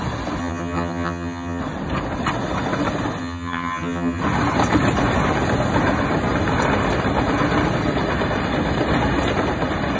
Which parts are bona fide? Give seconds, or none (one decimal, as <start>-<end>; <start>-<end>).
0.0-0.4; 1.6-3.2; 4.2-10.0